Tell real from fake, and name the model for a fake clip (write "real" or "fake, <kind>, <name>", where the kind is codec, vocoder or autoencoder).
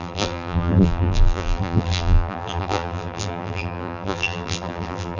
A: fake, vocoder, BigVGAN v2